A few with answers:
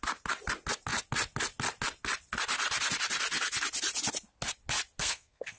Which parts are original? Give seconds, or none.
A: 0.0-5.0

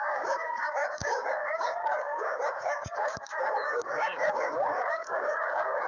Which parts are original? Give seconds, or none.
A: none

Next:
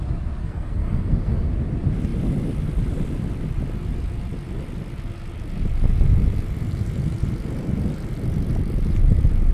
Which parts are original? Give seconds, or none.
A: 0.0-0.4; 1.5-9.5

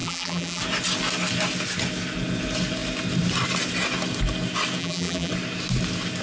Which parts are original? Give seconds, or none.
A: 0.6-4.8; 5.3-6.2